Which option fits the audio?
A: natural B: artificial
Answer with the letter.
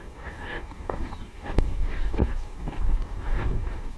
B